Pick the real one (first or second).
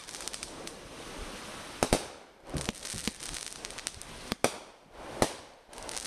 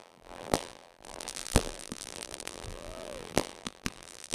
first